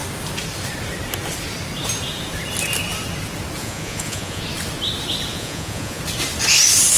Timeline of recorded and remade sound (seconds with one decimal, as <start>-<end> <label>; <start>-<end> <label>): 0.0-3.6 recorded; 3.6-4.4 remade; 4.4-5.3 recorded; 5.3-6.0 remade; 6.0-7.0 recorded